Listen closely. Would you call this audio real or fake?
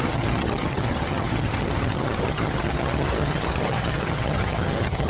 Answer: fake